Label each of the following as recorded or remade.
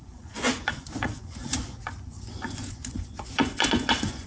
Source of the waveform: remade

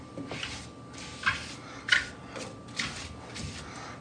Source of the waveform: recorded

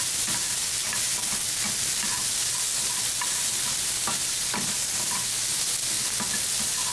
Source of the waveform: recorded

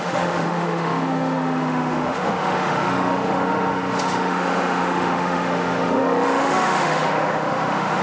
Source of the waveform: remade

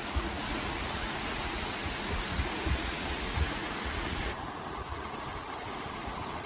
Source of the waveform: remade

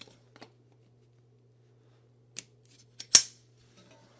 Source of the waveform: recorded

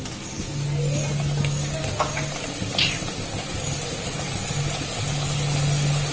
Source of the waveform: recorded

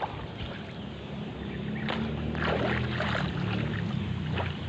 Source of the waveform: recorded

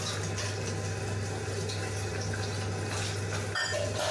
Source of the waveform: recorded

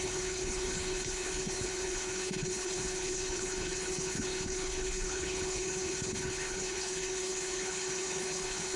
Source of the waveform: remade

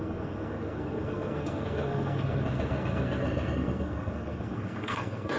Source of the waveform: remade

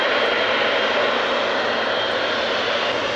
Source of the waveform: recorded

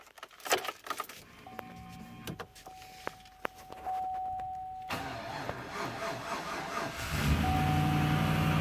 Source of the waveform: recorded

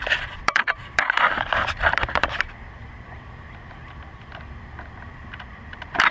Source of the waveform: remade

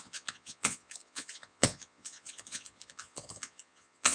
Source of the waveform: remade